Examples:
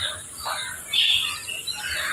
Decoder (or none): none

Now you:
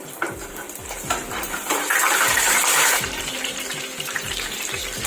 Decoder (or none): vocoder, BigVGAN v2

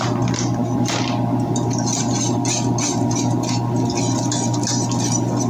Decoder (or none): vocoder, BigVGAN v2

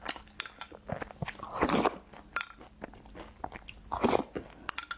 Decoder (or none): none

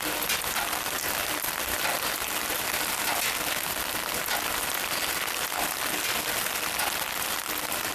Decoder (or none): none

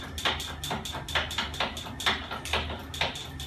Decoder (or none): none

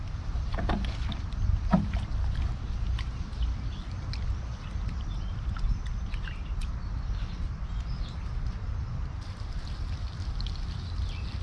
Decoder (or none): none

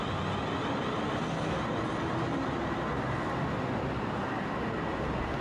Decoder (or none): none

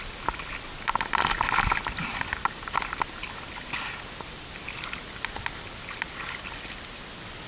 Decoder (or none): none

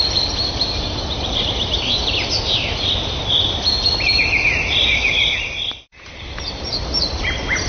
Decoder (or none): vocoder, BigVGAN v2